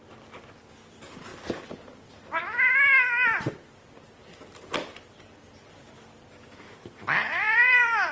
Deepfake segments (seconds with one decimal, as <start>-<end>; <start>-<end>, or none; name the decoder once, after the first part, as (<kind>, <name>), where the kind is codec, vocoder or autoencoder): none